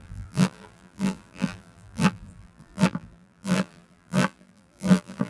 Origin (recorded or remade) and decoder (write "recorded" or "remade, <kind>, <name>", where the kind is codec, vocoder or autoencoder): remade, vocoder, BigVGAN v2